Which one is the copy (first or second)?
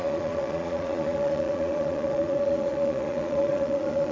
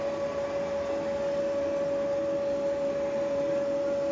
first